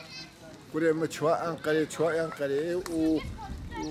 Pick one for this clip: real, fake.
real